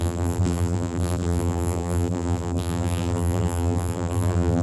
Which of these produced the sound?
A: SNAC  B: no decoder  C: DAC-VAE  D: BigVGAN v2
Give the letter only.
D